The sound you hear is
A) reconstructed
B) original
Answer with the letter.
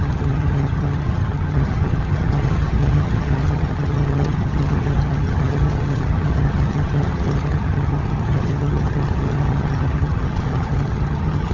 A